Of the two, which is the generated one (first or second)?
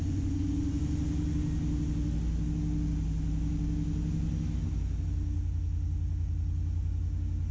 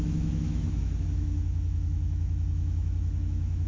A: second